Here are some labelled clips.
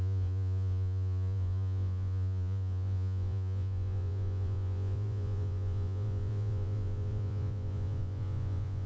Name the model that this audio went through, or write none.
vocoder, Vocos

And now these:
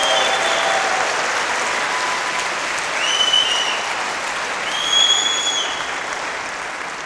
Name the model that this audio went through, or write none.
none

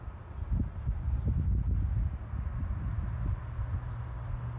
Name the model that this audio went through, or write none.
none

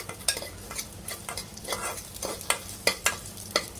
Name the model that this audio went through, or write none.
none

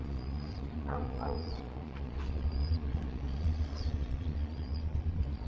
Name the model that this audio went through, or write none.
vocoder, Vocos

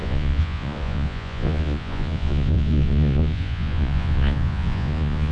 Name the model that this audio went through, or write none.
vocoder, Vocos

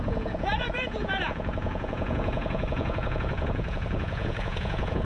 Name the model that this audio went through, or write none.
vocoder, Vocos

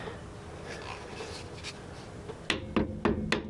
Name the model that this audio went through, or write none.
none